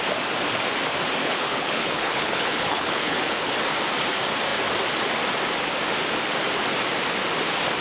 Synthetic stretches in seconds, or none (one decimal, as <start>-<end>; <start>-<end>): 1.2-3.5